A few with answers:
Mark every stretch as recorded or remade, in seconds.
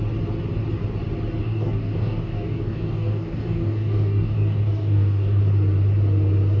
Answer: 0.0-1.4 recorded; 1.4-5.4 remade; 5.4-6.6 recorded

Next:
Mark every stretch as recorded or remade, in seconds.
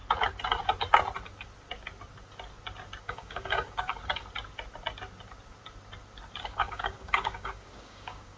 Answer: 0.0-3.0 recorded; 3.0-3.9 remade; 3.9-6.4 recorded; 6.4-8.4 remade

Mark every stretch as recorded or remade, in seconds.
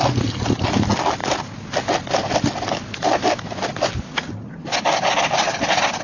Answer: 0.0-6.0 recorded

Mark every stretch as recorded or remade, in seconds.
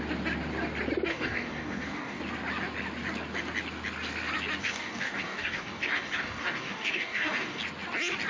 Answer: 0.0-1.1 recorded; 1.1-2.2 remade; 2.2-4.6 recorded; 4.6-7.6 remade; 7.6-8.3 recorded